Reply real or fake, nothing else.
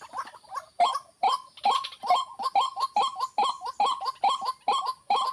real